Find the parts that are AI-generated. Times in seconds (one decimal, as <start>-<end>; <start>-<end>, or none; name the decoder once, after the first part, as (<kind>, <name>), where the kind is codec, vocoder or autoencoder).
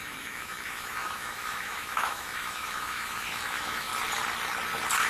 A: 0.0-3.9 (autoencoder, DAC-VAE)